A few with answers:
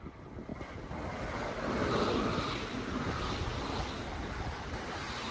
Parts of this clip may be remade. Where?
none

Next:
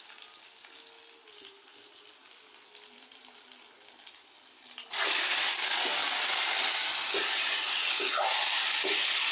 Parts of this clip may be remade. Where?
2.2-5.2 (vocoder, BigVGAN v2); 6.0-6.7

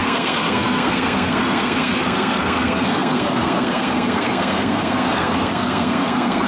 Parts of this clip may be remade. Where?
0.0-6.5 (codec, SNAC)

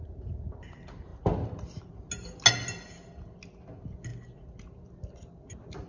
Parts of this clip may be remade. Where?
none

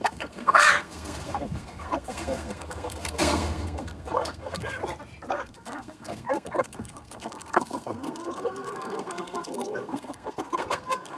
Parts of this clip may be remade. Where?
0.0-4.8 (codec, SNAC); 5.3-11.2

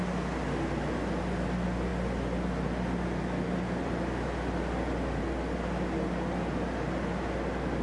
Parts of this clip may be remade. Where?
none